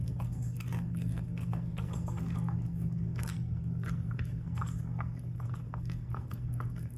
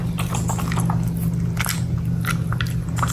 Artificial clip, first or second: first